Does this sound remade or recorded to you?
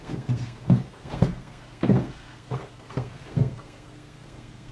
remade